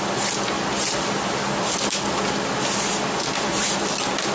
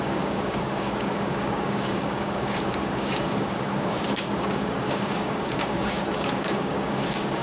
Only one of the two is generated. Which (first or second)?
second